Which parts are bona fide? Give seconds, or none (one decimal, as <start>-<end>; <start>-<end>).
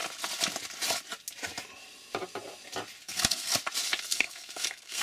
0.0-3.0; 3.5-4.0